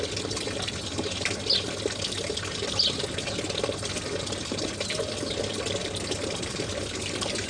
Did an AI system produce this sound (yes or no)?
no